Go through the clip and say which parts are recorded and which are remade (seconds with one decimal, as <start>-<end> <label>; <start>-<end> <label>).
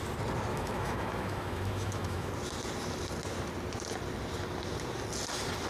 0.0-0.5 recorded; 0.5-2.3 remade; 2.3-5.7 recorded